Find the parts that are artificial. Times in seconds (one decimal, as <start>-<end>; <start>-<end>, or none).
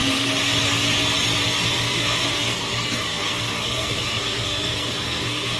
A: 1.8-5.6